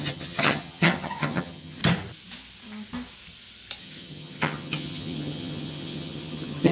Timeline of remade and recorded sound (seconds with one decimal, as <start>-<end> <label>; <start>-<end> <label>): 0.0-1.8 remade; 1.8-3.8 recorded; 3.8-6.7 remade